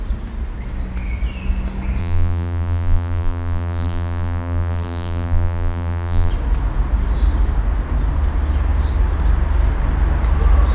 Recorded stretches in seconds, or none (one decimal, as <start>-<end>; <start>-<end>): 0.0-2.0; 6.3-10.7

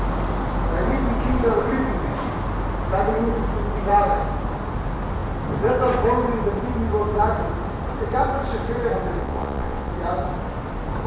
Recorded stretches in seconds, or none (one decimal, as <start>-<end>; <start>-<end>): 0.0-9.2; 9.9-11.1

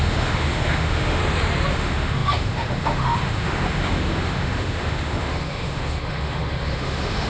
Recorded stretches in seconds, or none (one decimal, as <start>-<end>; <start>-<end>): 1.2-1.7